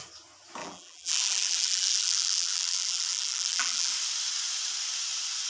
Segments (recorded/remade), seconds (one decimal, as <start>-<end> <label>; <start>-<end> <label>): 0.0-0.6 recorded; 0.6-3.9 remade; 3.9-5.5 recorded